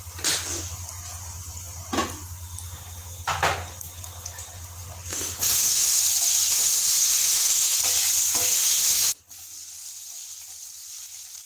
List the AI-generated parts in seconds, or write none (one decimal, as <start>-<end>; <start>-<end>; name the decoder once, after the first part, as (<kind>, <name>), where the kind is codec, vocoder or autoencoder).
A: 5.1-6.0 (autoencoder, DAC-VAE); 6.5-7.8; 8.5-9.2